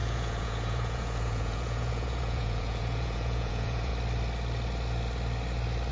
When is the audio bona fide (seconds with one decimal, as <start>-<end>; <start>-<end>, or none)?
3.9-5.9